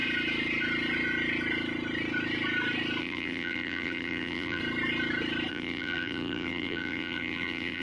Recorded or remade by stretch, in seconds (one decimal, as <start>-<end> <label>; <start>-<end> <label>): 0.0-3.0 recorded; 3.0-4.6 remade; 4.6-5.5 recorded; 5.5-7.8 remade